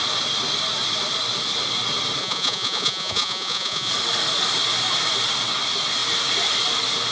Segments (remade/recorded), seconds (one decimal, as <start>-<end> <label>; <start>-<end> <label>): 0.0-2.2 recorded; 2.2-3.9 remade; 3.9-7.1 recorded